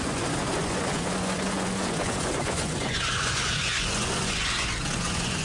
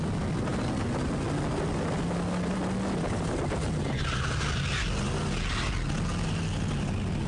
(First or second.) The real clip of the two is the second